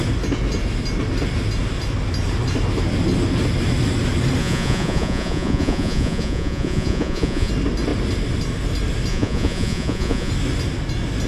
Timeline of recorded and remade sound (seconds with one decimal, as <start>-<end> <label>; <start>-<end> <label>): 0.0-4.4 recorded; 4.4-7.5 remade; 7.5-9.1 recorded; 9.1-10.3 remade; 10.3-11.3 recorded